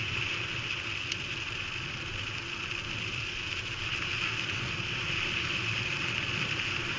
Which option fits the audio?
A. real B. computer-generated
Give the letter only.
A